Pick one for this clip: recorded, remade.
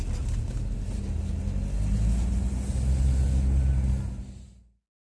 recorded